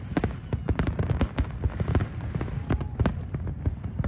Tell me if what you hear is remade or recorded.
recorded